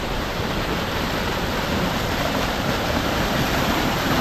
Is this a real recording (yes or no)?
no